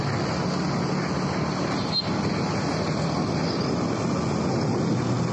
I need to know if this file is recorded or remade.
recorded